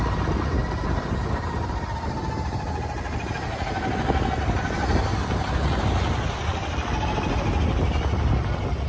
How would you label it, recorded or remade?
recorded